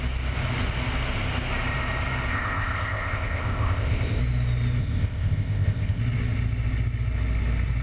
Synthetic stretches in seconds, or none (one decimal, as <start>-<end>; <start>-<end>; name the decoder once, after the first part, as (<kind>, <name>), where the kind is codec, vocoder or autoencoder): 2.3-4.2 (codec, ZipCodec); 4.8-6.0